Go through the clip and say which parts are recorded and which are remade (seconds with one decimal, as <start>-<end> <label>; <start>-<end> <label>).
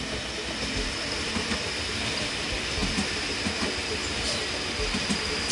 0.0-5.5 recorded